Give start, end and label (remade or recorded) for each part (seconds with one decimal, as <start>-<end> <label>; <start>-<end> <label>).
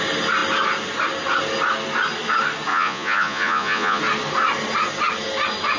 0.0-2.7 recorded; 2.7-4.0 remade; 4.0-5.8 recorded